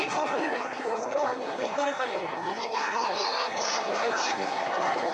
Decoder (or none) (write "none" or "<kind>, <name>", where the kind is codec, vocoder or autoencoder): codec, SNAC